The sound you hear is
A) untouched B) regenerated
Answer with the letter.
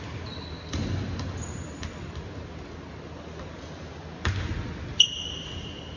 A